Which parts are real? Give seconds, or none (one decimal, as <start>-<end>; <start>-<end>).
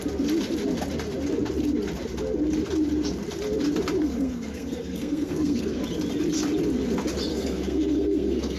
0.0-4.0; 5.8-7.3